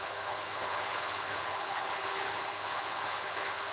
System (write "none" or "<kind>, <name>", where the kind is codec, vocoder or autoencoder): codec, HILCodec